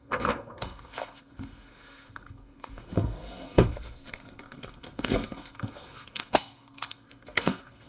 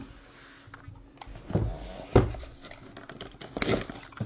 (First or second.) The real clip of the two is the second